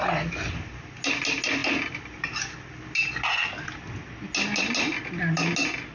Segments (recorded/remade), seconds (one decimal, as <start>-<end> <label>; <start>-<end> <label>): 0.0-5.9 recorded